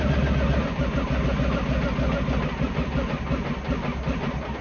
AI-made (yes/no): no